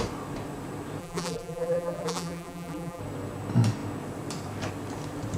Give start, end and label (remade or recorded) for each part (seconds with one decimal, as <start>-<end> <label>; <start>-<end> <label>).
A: 0.0-1.0 recorded; 1.0-3.0 remade; 3.0-5.4 recorded